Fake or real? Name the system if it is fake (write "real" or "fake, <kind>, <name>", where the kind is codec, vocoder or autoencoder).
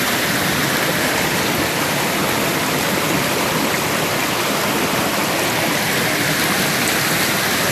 real